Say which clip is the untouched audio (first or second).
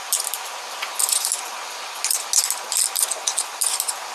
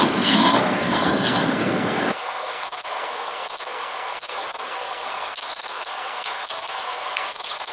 first